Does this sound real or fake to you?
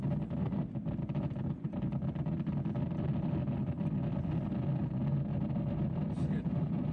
real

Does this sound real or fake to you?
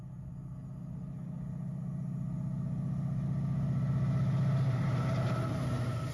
real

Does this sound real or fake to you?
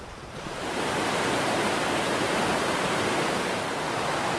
fake